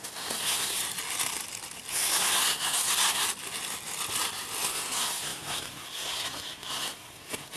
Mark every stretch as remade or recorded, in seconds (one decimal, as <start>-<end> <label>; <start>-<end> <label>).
0.0-0.8 remade; 0.8-1.9 recorded; 1.9-3.2 remade; 3.2-4.7 recorded; 4.7-7.6 remade